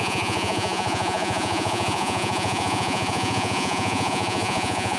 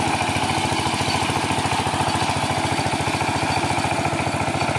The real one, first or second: second